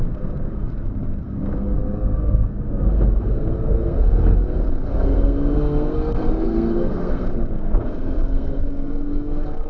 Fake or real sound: fake